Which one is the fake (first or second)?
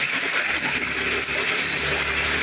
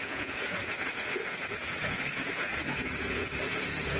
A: second